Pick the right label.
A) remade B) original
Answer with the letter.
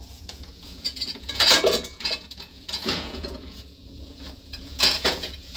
A